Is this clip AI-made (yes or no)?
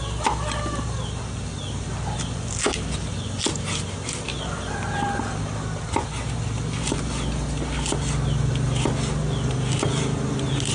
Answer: no